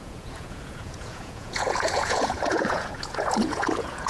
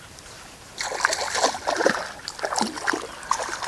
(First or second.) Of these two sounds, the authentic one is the second